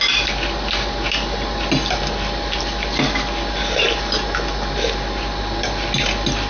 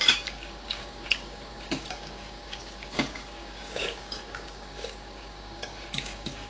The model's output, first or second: second